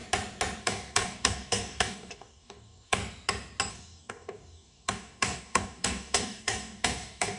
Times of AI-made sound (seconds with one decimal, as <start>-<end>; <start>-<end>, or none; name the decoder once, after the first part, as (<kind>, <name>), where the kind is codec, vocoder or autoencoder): 0.6-3.0 (codec, DAC); 3.7-7.4